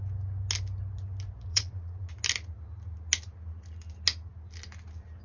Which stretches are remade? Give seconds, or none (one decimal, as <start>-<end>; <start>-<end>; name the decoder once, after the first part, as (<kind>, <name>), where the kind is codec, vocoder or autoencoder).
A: 1.5-2.1 (vocoder, Vocos)